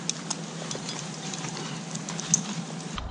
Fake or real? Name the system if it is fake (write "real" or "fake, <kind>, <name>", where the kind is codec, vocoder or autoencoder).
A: real